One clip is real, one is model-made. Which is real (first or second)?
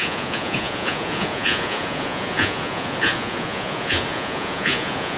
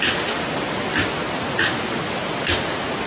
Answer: second